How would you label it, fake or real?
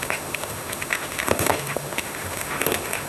fake